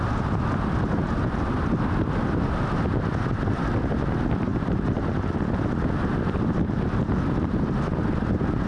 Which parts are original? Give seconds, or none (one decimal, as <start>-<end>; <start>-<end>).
0.0-8.7